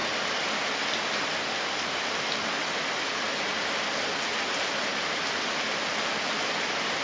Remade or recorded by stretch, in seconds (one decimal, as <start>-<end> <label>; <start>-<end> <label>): 0.0-7.0 recorded